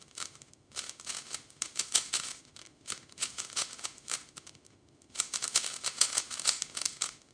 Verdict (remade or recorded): remade